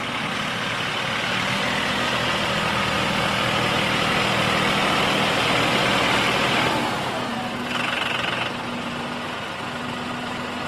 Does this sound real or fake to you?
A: real